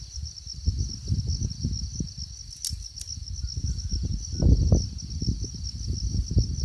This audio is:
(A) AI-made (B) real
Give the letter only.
B